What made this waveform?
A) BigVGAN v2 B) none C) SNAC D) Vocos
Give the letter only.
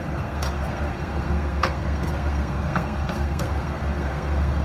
C